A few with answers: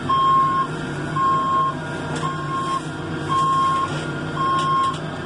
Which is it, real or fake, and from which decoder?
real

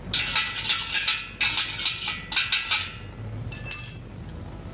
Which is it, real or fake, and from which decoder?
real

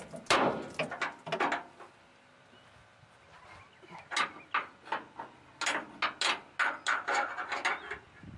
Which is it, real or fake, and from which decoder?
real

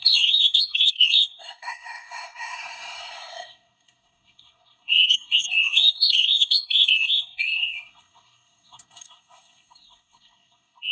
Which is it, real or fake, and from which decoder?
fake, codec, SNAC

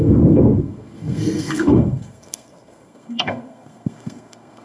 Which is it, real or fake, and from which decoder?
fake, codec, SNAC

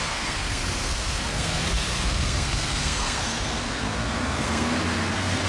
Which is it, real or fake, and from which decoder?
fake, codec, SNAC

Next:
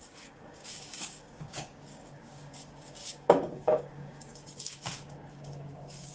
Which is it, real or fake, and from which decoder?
fake, codec, DAC